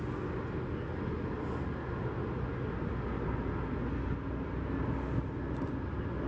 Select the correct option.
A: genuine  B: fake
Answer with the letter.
A